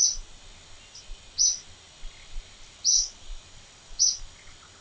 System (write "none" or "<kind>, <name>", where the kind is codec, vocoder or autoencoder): none